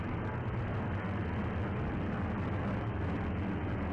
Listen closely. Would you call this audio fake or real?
real